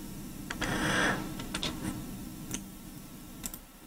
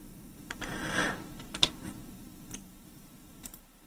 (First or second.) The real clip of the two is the first